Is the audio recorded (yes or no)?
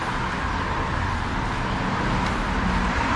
yes